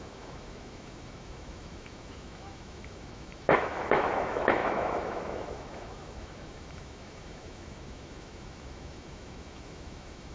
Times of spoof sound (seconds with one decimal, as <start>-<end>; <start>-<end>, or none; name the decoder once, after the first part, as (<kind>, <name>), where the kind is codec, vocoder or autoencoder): 0.0-10.3 (autoencoder, DAC-VAE)

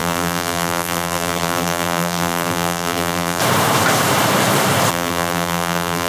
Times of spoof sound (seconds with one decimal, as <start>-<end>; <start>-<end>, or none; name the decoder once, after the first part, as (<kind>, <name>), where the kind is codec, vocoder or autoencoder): 0.0-3.4 (vocoder, BigVGAN v2); 4.9-6.1

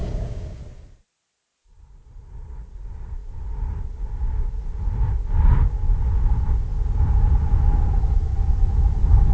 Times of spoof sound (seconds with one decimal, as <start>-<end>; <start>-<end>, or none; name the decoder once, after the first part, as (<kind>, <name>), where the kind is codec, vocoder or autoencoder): 0.0-0.6 (codec, DAC)

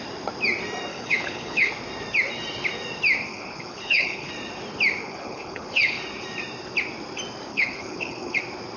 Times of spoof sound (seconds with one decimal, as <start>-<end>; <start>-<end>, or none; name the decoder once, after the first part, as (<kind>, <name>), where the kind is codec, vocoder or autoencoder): 0.9-1.7 (codec, HILCodec); 3.3-4.3; 5.0-6.0; 7.5-8.4

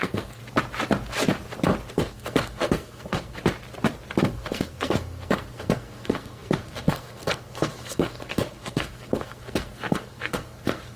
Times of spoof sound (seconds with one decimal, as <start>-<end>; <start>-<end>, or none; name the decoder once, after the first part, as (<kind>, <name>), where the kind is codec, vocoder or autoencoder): 0.0-0.4 (codec, SNAC); 1.9-3.4; 4.2-11.0

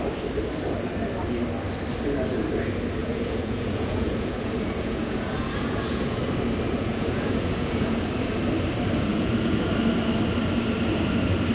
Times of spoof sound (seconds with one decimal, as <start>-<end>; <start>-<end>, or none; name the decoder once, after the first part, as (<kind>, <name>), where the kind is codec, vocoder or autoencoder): 3.0-6.2 (vocoder, Vocos); 6.7-8.0; 9.1-9.7

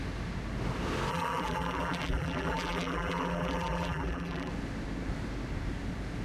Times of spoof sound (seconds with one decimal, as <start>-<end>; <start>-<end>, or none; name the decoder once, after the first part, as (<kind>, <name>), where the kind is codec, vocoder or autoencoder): 1.1-4.5 (vocoder, BigVGAN v2)

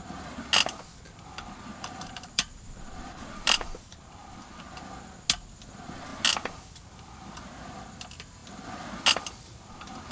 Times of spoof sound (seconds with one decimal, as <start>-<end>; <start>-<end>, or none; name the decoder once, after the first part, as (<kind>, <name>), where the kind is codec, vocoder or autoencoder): 1.7-4.6 (vocoder, BigVGAN v2)